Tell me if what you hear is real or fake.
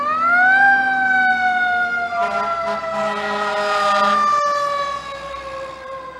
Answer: real